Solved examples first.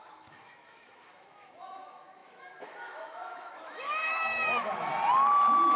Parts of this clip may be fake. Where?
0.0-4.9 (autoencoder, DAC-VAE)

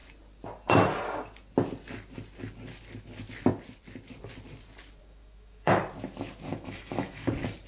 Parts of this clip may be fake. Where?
5.0-5.8 (autoencoder, DAC-VAE); 6.5-7.3

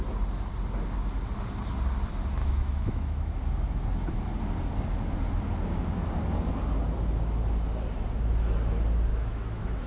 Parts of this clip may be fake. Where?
2.4-3.4 (autoencoder, DAC-VAE); 9.1-9.9

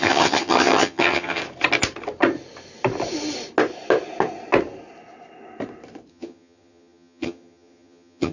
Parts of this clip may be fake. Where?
0.0-1.4 (vocoder, HiFi-GAN); 6.1-8.3

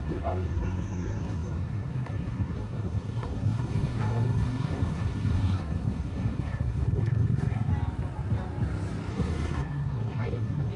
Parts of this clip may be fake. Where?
0.0-7.7 (codec, SNAC); 9.1-10.8

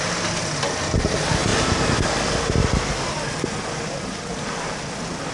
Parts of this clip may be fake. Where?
none

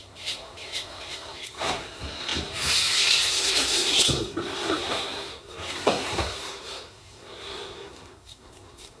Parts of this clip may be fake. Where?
0.0-9.0 (codec, SNAC)

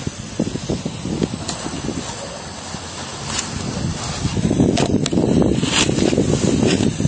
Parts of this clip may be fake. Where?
none